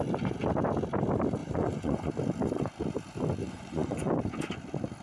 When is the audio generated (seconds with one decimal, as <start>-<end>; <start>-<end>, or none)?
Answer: 1.4-2.1; 3.4-4.1